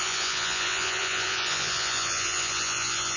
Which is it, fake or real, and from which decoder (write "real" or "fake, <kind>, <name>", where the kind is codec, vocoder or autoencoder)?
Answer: fake, vocoder, Vocos